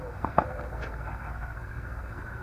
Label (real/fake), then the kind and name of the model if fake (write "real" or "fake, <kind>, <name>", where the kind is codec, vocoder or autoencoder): fake, codec, SNAC